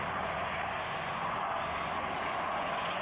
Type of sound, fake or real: fake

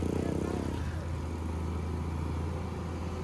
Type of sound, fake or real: real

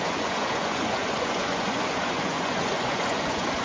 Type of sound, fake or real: fake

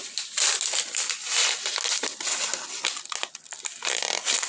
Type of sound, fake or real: real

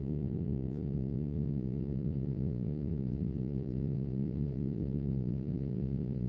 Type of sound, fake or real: fake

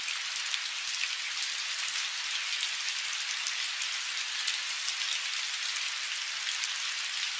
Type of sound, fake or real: real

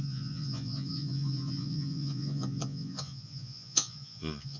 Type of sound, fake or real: fake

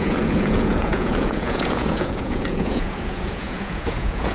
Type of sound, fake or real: fake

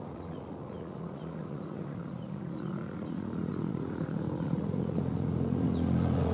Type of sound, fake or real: fake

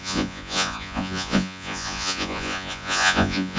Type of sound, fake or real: fake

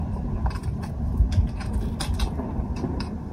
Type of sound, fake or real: real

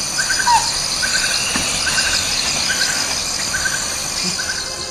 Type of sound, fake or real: real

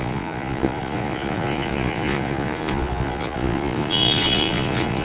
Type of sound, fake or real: fake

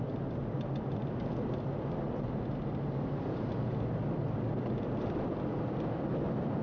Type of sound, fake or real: real